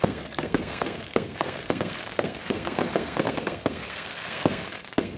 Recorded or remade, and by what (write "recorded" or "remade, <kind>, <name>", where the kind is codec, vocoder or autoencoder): remade, codec, SNAC